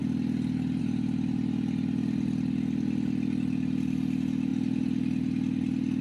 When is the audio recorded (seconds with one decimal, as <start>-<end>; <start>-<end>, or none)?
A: 0.0-6.0